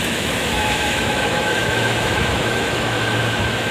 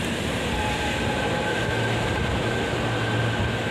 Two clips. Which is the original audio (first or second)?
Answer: second